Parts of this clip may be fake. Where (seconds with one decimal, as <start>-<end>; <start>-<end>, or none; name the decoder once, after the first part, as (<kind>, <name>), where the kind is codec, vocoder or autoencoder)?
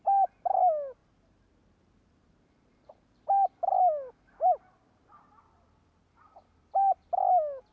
1.0-3.6 (vocoder, BigVGAN v2)